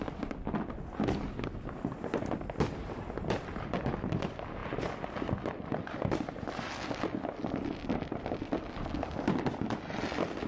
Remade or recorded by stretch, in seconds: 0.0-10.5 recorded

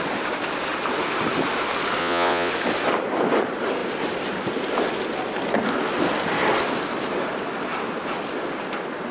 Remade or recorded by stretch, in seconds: 0.0-2.0 recorded; 2.0-2.5 remade; 2.5-9.1 recorded

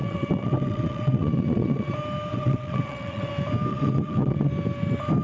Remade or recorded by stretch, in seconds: 0.0-1.9 remade; 1.9-2.3 recorded; 2.3-3.3 remade; 3.3-3.7 recorded; 3.7-4.5 remade; 4.5-5.2 recorded

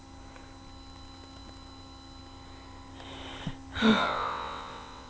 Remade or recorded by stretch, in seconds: 0.0-3.9 recorded; 3.9-5.1 remade

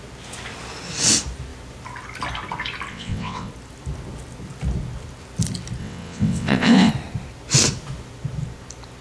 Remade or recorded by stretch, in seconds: 0.0-2.9 recorded; 2.9-3.5 remade; 3.5-5.8 recorded; 5.8-6.9 remade; 6.9-9.0 recorded

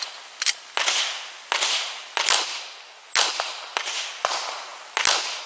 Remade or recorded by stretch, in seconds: 0.0-5.5 recorded